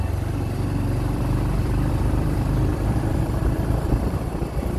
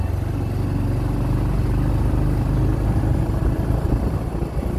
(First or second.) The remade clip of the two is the first